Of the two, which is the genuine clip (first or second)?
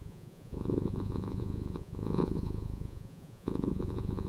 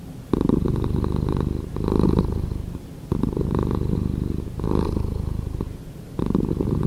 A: second